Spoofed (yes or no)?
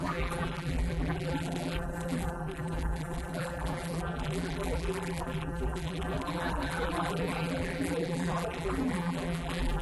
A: yes